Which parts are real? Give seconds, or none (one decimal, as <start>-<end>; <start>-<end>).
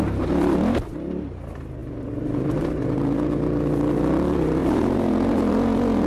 0.0-1.8; 2.6-4.6; 5.1-6.1